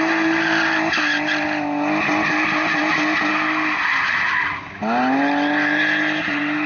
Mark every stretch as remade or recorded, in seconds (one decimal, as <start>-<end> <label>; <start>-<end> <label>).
0.0-6.7 recorded

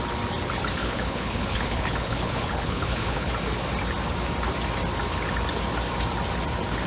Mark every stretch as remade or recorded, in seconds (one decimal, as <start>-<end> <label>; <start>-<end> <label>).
0.0-0.8 recorded; 0.8-3.3 remade; 3.3-6.9 recorded

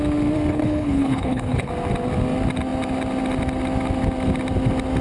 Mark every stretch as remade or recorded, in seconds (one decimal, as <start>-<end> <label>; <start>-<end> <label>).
0.0-0.5 recorded; 0.5-1.7 remade; 1.7-5.0 recorded

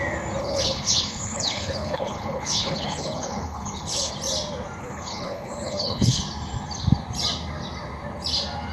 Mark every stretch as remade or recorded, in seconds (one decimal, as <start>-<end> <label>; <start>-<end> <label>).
0.0-0.4 recorded; 0.4-4.1 remade; 4.1-4.8 recorded; 4.8-6.2 remade; 6.2-8.7 recorded